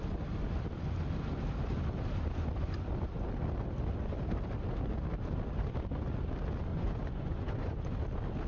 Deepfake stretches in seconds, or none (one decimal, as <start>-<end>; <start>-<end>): 6.7-8.0